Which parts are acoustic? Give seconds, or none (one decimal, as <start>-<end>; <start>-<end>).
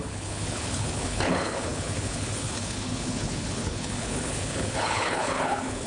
none